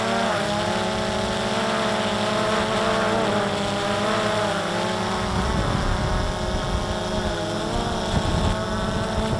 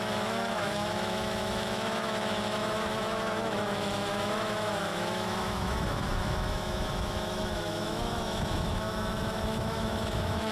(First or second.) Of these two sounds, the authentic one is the first